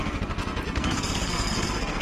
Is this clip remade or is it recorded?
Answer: remade